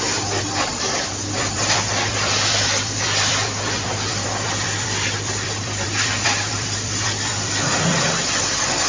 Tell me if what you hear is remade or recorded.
remade